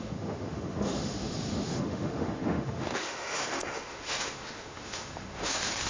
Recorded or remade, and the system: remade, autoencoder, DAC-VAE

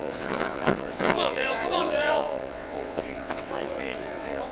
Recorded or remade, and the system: remade, vocoder, WaveNeXt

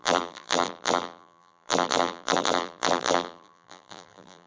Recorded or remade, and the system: remade, vocoder, BigVGAN v2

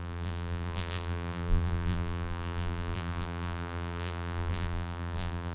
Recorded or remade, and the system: remade, vocoder, BigVGAN v2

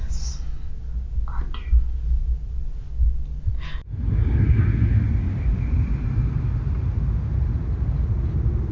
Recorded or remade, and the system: recorded